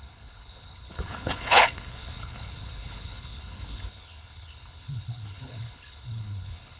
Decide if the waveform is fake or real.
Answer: fake